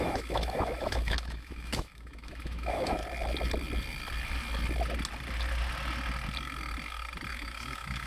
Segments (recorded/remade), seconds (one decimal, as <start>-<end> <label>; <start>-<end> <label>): 0.0-3.0 remade; 3.0-7.3 recorded; 7.3-8.1 remade